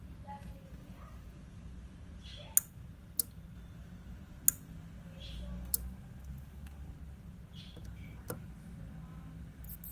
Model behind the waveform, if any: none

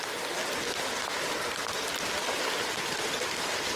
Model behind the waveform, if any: none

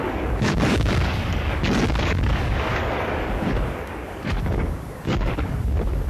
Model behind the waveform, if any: codec, DAC